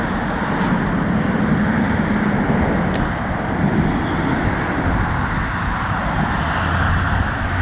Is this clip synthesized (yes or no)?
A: no